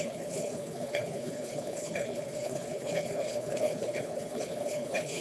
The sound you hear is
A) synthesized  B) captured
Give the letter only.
A